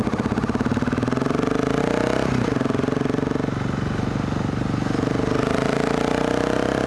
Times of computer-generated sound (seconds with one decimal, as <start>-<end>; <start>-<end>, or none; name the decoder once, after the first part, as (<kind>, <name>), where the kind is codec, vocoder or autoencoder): none